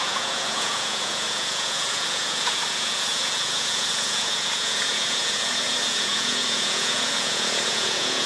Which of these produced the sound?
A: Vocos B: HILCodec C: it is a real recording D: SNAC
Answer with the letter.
A